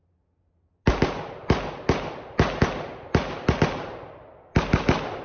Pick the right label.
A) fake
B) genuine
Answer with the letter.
B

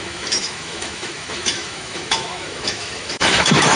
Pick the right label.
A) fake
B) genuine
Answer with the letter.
A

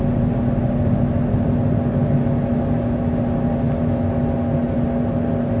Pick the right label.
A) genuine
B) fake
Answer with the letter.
A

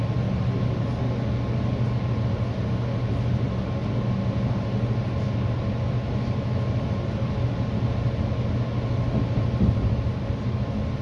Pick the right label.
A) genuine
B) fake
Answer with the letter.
A